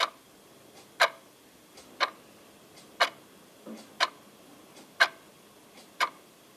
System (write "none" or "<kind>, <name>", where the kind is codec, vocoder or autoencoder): none